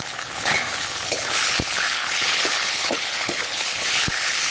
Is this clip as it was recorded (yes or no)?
no